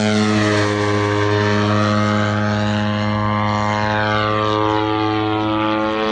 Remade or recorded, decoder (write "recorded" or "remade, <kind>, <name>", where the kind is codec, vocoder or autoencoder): recorded